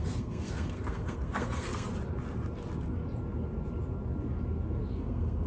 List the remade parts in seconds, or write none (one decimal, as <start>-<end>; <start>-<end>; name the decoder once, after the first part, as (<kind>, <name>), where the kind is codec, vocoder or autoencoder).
0.0-1.9 (codec, SNAC); 4.9-5.5